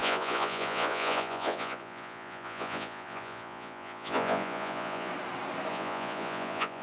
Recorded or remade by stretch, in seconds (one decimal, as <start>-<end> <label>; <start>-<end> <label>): 0.0-5.1 remade; 5.1-5.7 recorded; 5.7-6.8 remade